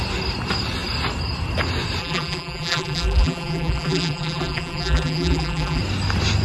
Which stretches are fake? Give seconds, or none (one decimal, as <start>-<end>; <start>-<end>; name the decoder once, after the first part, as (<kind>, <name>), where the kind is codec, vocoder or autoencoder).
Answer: 2.0-5.8 (vocoder, BigVGAN v2)